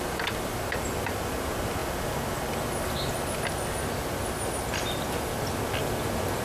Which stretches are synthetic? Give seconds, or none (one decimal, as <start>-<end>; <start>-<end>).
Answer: none